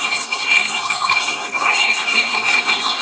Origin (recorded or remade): remade